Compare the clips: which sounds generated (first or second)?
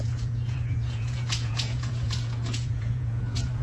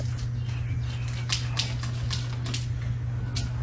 first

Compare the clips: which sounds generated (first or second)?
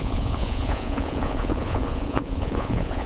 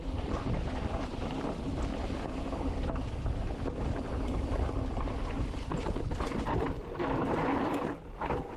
first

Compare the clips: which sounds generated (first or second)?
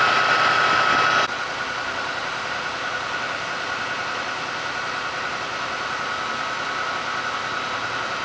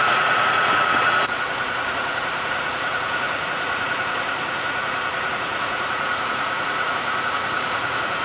second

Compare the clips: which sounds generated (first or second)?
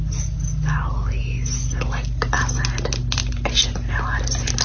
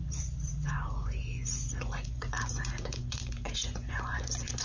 second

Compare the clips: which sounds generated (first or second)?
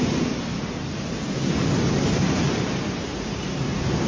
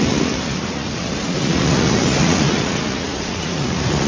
second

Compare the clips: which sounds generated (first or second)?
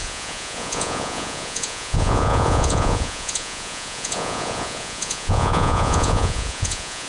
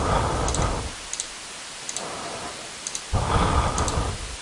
first